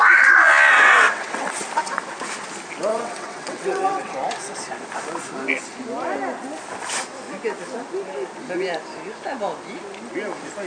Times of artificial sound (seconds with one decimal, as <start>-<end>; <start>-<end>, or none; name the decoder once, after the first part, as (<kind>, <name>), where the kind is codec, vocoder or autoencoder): 0.7-1.6 (vocoder, WaveNeXt); 2.9-4.1